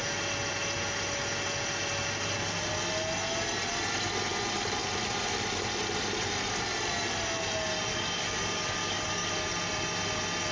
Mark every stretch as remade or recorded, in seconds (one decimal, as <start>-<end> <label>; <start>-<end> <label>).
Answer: 0.0-7.9 recorded; 7.9-9.3 remade; 9.3-10.5 recorded